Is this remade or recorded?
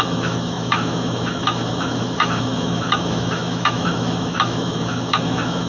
remade